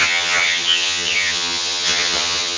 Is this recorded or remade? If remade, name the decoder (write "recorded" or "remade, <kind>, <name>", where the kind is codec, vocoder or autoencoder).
remade, vocoder, HiFi-GAN